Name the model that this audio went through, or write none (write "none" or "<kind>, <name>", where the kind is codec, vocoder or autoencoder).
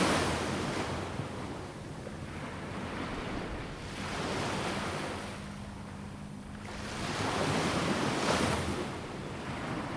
none